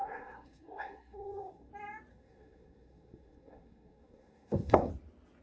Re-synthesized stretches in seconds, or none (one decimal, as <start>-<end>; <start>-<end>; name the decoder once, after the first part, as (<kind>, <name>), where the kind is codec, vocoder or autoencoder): 0.0-1.7 (codec, SNAC); 2.1-4.9